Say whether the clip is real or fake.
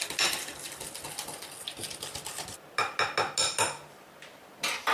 real